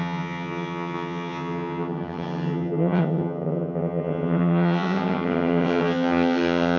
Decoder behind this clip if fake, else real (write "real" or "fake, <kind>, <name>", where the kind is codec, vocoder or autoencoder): fake, vocoder, HiFi-GAN